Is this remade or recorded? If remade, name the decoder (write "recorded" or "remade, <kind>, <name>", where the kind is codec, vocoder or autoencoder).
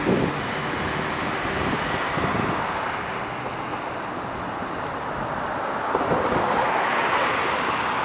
recorded